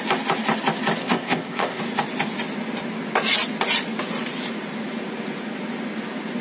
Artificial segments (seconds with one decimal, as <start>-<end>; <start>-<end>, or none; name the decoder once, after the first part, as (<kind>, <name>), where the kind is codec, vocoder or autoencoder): 1.0-1.8 (codec, ZipCodec)